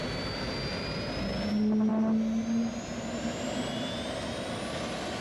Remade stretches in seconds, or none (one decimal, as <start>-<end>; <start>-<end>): none

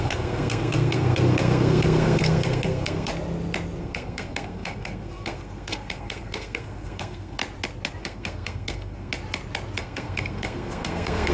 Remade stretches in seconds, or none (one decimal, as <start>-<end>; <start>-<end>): 0.0-3.1; 3.8-7.4; 8.0-9.1; 9.8-11.3